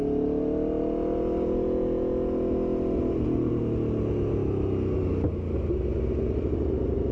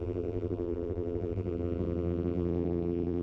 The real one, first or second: first